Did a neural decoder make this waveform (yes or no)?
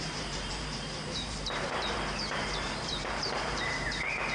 yes